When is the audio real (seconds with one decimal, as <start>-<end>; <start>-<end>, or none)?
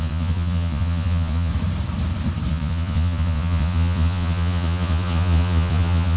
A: 1.5-2.5